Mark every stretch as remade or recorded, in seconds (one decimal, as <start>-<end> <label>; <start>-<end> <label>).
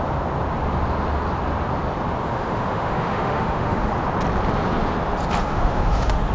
0.0-2.2 recorded; 2.2-3.9 remade; 3.9-5.4 recorded; 5.4-6.3 remade